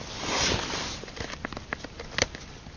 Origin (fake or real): real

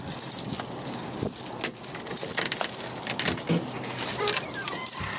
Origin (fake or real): real